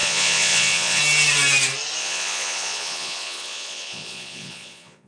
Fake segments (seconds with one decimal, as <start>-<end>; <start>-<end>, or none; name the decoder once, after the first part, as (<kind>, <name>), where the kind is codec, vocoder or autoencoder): 0.0-1.0 (vocoder, Vocos); 2.0-5.1